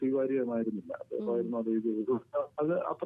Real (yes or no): yes